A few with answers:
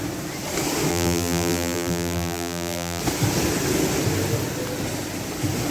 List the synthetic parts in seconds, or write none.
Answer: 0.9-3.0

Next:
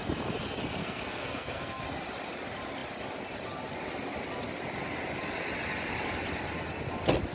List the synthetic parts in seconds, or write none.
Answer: 0.8-1.8

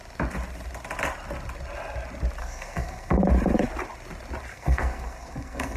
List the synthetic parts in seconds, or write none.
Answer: 2.4-3.2; 4.5-5.8